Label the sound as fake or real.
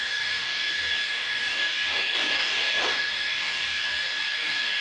fake